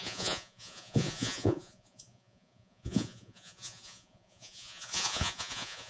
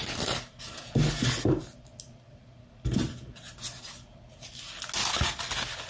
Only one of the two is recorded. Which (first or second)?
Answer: second